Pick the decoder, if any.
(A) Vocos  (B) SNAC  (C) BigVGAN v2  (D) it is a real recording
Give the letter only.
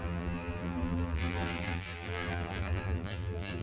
C